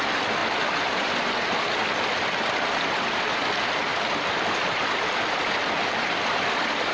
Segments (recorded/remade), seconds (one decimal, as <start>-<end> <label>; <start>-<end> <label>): 0.0-6.9 recorded